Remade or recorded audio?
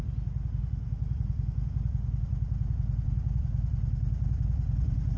recorded